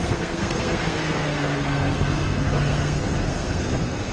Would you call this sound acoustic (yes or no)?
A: no